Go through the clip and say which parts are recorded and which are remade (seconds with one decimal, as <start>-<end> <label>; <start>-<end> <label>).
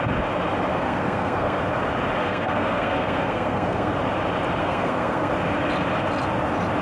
0.0-0.7 recorded; 0.7-1.6 remade; 1.6-2.2 recorded; 2.2-3.9 remade; 3.9-4.6 recorded; 4.6-5.3 remade; 5.3-6.8 recorded